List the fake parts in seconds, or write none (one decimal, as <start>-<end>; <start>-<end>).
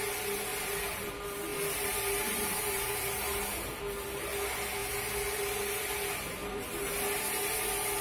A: 0.5-1.1; 1.5-3.8; 6.4-6.9